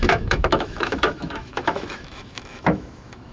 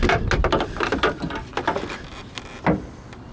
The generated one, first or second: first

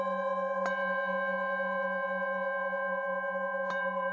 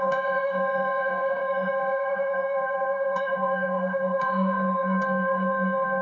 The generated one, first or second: second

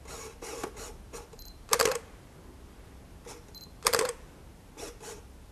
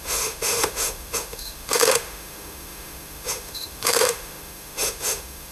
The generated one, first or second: second